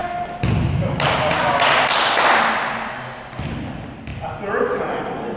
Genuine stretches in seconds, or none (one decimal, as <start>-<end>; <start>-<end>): 0.0-5.4